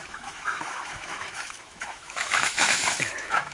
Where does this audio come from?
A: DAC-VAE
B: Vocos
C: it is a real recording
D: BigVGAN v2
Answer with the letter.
A